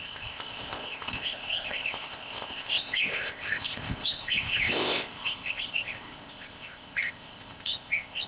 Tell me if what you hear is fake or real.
fake